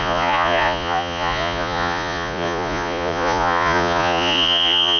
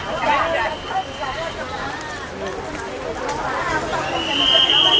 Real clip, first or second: second